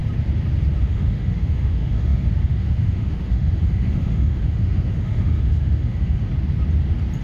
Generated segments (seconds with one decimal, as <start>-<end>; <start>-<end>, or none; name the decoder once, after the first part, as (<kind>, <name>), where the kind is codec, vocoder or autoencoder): 0.8-6.3 (autoencoder, DAC-VAE)